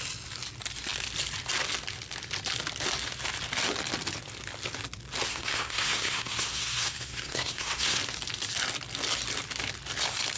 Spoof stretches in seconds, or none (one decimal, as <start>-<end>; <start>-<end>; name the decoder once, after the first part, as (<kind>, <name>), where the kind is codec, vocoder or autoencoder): 5.3-8.0 (codec, SNAC)